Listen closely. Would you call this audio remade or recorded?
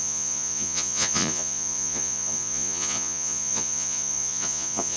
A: remade